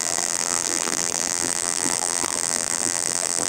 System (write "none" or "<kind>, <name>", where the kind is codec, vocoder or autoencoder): vocoder, BigVGAN v2